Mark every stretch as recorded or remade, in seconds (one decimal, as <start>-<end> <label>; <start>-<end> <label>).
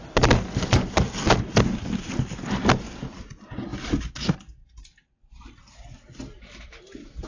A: 0.0-7.3 recorded